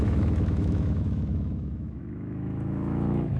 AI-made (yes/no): yes